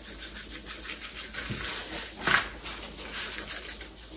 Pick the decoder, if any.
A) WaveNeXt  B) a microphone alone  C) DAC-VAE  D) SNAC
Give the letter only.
B